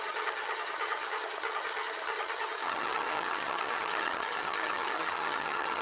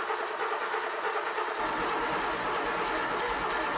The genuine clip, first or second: second